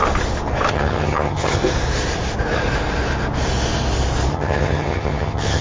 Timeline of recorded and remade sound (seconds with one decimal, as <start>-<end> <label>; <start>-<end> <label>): 0.0-0.7 recorded; 0.7-1.6 remade; 1.6-4.3 recorded; 4.3-5.6 remade